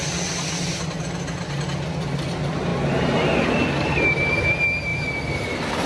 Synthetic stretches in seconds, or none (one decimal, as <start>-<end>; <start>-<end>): none